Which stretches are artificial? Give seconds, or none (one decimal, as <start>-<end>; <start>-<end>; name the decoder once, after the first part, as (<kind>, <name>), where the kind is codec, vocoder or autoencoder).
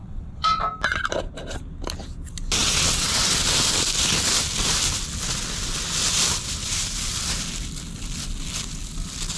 0.0-0.6 (vocoder, WaveNeXt); 2.6-3.3